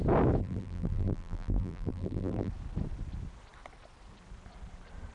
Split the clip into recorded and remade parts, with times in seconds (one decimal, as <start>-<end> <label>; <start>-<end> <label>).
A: 0.0-0.4 recorded; 0.4-2.5 remade; 2.5-5.1 recorded